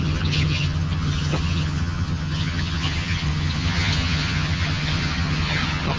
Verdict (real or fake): fake